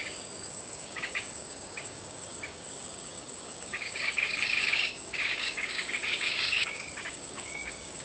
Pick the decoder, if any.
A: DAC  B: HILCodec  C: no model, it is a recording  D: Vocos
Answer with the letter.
A